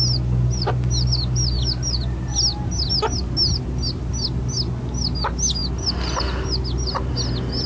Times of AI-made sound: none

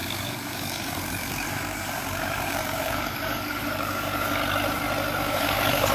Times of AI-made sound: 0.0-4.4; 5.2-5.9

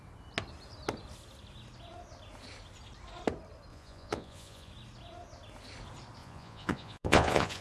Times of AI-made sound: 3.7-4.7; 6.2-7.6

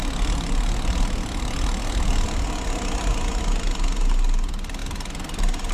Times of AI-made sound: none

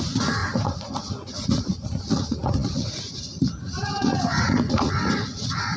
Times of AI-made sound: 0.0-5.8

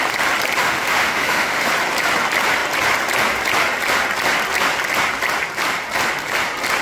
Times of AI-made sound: 0.6-1.7